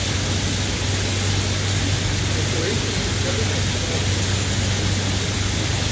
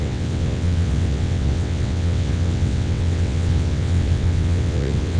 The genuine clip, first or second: first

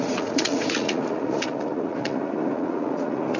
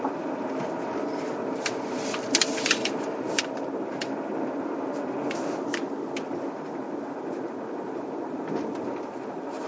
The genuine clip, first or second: second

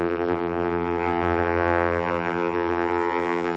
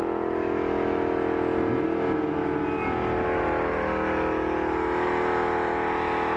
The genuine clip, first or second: second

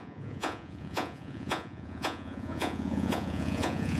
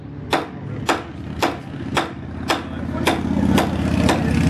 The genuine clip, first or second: second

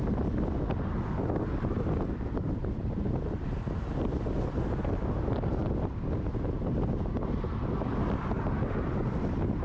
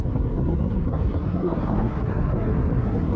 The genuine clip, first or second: first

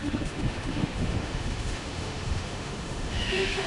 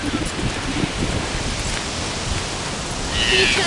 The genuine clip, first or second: second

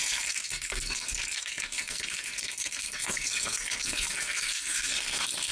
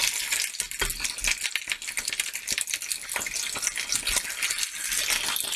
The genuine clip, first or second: second